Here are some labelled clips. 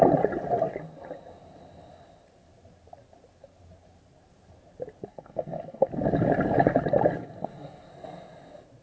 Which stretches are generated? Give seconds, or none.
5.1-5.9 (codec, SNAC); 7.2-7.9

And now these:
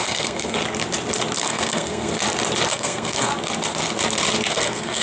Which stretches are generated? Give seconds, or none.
0.0-0.6 (codec, SNAC); 1.4-2.2; 2.7-3.3; 4.5-5.0

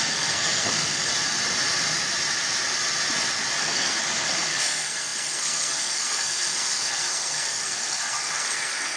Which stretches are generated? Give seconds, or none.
0.0-1.1 (codec, SNAC); 3.6-9.0

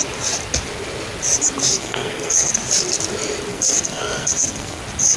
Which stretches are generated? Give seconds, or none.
1.7-2.5 (codec, SNAC); 3.5-4.8

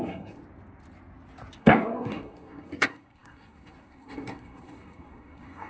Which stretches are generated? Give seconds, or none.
0.0-0.4 (codec, SNAC); 1.6-5.7